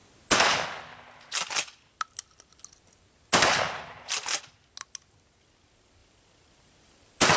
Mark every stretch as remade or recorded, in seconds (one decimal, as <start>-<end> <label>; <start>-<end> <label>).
0.0-6.0 recorded; 6.0-7.4 remade